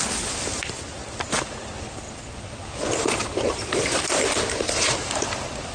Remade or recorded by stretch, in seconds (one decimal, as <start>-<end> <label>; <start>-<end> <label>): 0.0-5.7 recorded

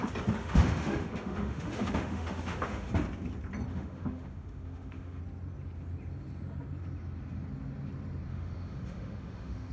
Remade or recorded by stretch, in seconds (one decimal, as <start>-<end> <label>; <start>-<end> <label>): 0.0-0.4 recorded; 0.4-2.9 remade; 2.9-3.7 recorded; 3.7-5.2 remade; 5.2-8.3 recorded; 8.3-9.7 remade

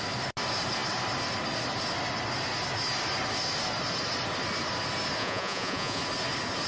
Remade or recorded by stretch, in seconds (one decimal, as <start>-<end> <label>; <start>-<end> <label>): 0.0-5.2 recorded; 5.2-6.0 remade; 6.0-6.7 recorded

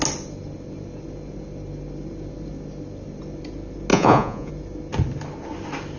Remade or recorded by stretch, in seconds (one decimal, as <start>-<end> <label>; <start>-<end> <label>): 0.0-3.9 recorded; 3.9-4.5 remade; 4.5-6.0 recorded